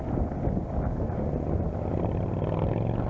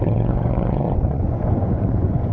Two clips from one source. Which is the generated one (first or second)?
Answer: second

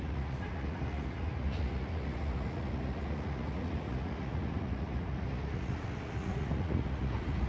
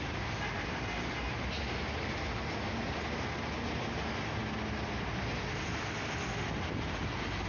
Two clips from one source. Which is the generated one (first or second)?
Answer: first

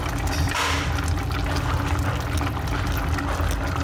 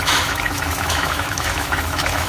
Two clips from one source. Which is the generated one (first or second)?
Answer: second